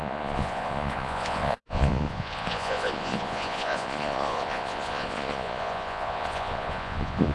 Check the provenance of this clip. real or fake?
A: fake